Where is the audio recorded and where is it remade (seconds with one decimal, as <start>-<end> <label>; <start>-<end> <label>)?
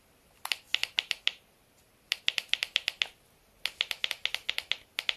0.0-5.2 recorded